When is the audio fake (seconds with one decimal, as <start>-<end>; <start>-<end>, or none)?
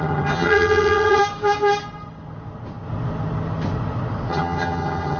0.0-1.2; 4.3-5.2